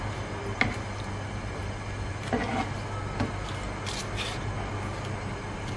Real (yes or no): yes